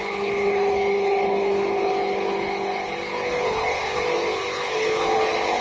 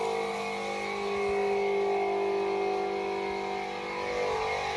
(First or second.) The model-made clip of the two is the first